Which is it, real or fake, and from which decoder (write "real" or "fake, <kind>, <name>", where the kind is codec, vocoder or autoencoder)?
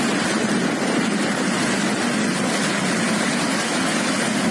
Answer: real